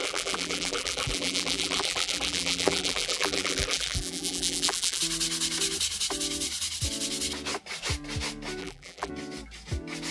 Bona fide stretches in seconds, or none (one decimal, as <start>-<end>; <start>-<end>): 5.0-8.6; 9.1-10.1